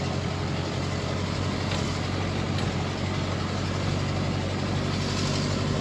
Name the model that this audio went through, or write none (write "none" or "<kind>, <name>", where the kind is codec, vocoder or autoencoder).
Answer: none